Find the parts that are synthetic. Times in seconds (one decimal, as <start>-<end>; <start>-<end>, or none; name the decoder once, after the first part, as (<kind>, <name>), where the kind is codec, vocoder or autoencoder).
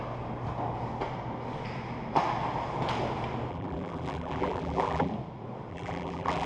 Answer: 3.5-5.1 (vocoder, BigVGAN v2); 5.7-6.5